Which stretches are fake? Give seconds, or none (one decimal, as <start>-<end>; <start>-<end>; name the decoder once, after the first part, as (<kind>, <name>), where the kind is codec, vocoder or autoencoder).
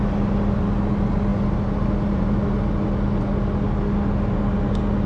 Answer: none